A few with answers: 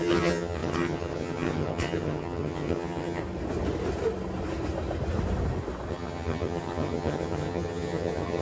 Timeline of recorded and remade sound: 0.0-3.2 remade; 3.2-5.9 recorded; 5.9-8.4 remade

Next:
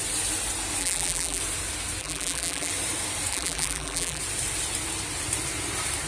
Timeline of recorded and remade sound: 0.0-0.8 recorded; 0.8-1.4 remade; 1.4-2.0 recorded; 2.0-2.7 remade; 2.7-3.3 recorded; 3.3-4.2 remade; 4.2-6.1 recorded

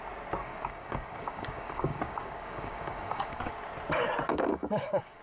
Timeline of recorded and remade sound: 0.0-0.4 recorded; 0.4-3.5 remade; 3.5-4.3 recorded; 4.3-5.2 remade

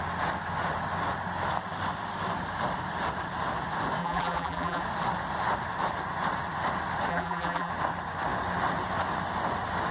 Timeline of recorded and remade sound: 0.0-4.0 recorded; 4.0-4.8 remade; 4.8-7.1 recorded; 7.1-7.7 remade; 7.7-9.9 recorded

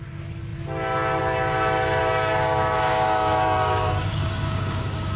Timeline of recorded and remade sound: 0.0-2.0 recorded; 2.0-5.2 remade

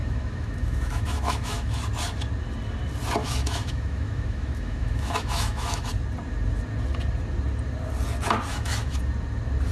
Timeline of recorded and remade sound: 0.0-1.8 remade; 1.8-3.2 recorded; 3.2-5.9 remade; 5.9-8.5 recorded; 8.5-9.0 remade; 9.0-9.7 recorded

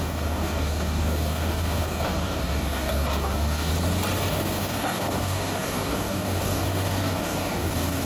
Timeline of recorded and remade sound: 0.0-3.7 remade; 3.7-4.3 recorded; 4.3-8.1 remade

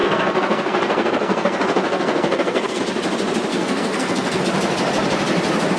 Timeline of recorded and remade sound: 0.0-2.8 remade; 2.8-3.5 recorded; 3.5-4.4 remade; 4.4-5.8 recorded